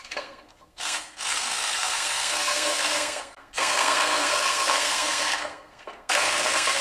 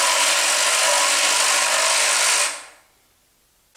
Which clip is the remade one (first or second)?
first